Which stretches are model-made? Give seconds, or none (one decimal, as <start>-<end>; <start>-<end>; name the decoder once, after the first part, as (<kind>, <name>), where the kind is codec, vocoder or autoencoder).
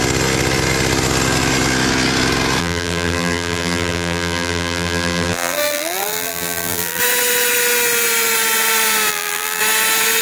2.6-7.0 (vocoder, BigVGAN v2); 9.1-9.6